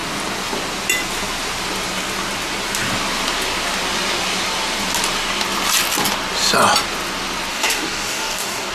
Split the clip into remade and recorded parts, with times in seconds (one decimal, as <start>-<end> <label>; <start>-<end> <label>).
0.0-7.5 recorded; 7.5-8.7 remade